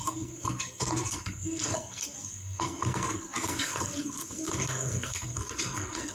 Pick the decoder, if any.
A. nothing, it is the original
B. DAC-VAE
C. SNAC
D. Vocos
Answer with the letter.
C